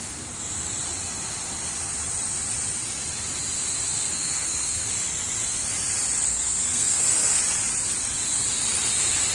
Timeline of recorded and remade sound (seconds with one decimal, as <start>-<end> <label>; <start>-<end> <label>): 0.0-4.1 recorded; 4.1-4.9 remade; 4.9-6.3 recorded; 6.3-7.4 remade; 7.4-9.3 recorded